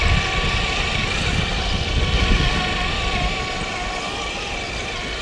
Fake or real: real